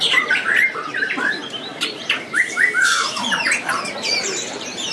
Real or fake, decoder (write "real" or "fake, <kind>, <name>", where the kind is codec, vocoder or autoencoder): fake, vocoder, BigVGAN v2